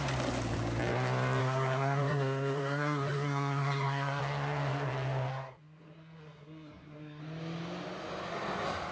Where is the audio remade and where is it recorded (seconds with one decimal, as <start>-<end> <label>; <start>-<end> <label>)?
0.0-1.4 recorded; 1.4-4.2 remade; 4.2-5.3 recorded; 5.3-7.2 remade; 7.2-8.9 recorded